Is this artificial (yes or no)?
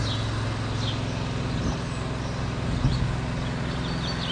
no